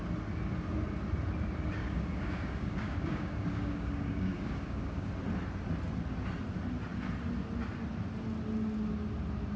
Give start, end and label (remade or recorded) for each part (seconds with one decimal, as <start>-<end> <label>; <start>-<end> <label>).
0.0-1.8 recorded; 1.8-5.1 remade; 5.1-9.6 recorded